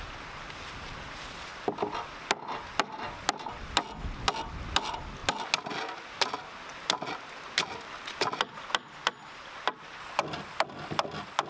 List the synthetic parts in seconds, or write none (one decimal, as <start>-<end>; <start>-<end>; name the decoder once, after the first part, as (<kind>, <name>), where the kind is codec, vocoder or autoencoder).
none